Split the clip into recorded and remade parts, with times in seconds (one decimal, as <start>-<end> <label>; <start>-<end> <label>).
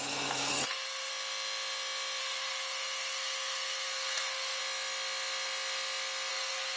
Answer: 0.0-1.1 remade; 1.1-2.2 recorded; 2.2-4.6 remade; 4.6-6.3 recorded; 6.3-6.8 remade